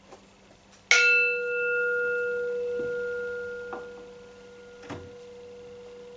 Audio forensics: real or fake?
real